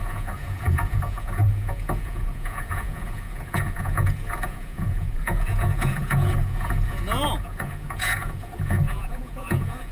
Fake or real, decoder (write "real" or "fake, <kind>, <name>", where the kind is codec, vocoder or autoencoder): fake, vocoder, Vocos